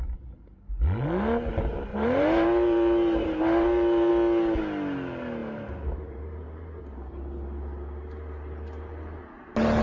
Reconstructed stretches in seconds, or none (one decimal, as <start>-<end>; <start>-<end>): 1.9-4.1; 5.4-6.8